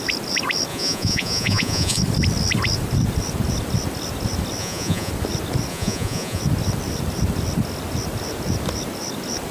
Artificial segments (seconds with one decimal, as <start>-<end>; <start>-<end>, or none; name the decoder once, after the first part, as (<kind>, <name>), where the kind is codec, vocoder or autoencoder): 0.7-2.0 (vocoder, Vocos); 4.6-5.1; 5.7-6.4